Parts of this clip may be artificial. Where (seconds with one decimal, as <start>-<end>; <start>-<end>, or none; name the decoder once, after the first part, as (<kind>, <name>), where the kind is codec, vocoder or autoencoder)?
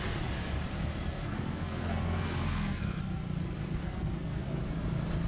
1.2-3.0 (codec, SNAC); 3.8-4.6